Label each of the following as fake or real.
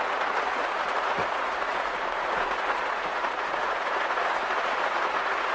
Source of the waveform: fake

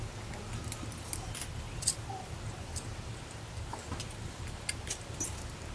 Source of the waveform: real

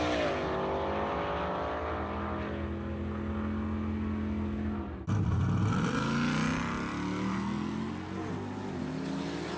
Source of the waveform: real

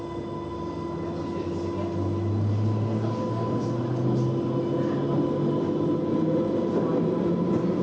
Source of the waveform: real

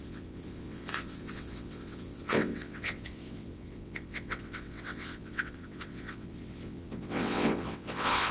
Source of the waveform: fake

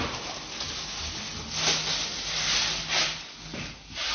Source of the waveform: real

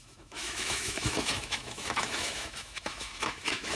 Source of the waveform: fake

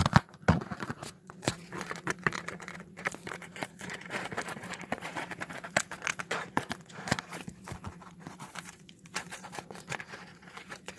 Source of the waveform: fake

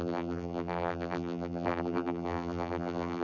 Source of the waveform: fake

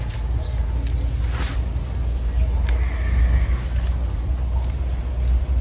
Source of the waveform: real